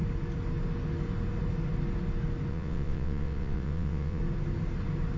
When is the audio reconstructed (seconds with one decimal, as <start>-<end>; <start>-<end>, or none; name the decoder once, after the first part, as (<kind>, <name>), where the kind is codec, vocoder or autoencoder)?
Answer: 2.5-4.2 (vocoder, WaveNeXt)